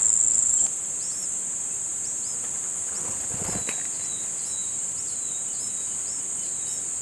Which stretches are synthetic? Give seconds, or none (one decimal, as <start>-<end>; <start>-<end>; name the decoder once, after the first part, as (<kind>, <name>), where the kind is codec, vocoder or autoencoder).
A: 0.4-2.3 (vocoder, BigVGAN v2); 4.6-5.6